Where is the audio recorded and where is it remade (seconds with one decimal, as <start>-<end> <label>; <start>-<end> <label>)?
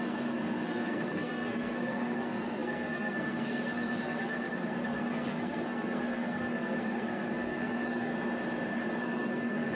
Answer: 0.0-8.1 remade; 8.1-9.0 recorded; 9.0-9.7 remade